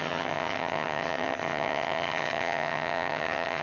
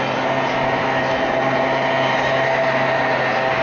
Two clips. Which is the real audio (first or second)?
second